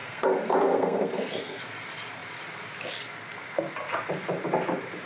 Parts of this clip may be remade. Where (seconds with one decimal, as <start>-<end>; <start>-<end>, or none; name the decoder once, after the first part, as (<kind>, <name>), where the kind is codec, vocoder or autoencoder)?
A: 0.0-1.6 (codec, SNAC)